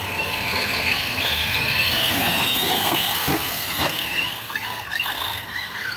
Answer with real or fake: fake